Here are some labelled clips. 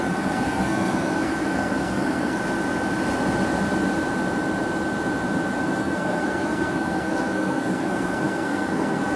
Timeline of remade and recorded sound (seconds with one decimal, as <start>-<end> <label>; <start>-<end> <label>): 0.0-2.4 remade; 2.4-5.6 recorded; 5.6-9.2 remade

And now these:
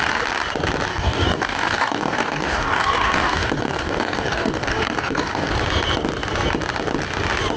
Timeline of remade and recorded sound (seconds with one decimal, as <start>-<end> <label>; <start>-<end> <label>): 0.0-0.9 recorded; 0.9-5.5 remade; 5.5-7.6 recorded

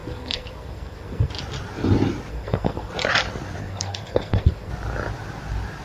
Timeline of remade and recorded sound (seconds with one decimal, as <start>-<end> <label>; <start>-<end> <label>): 0.0-1.3 remade; 1.3-2.3 recorded; 2.3-2.9 remade; 2.9-3.6 recorded; 3.6-4.7 remade; 4.7-5.8 recorded